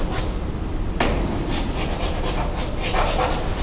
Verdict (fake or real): real